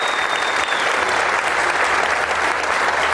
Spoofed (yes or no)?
no